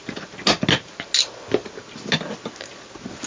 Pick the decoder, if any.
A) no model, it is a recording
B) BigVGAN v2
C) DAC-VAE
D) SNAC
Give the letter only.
A